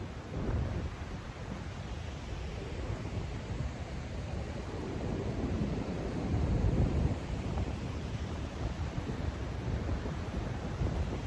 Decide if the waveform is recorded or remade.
remade